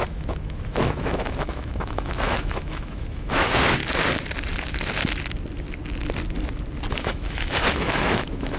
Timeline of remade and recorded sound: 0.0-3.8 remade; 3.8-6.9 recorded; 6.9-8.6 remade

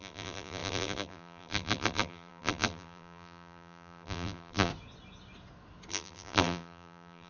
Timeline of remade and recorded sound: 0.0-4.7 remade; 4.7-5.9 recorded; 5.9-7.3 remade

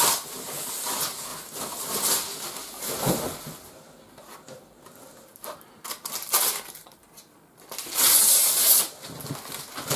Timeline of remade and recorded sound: 0.0-10.0 recorded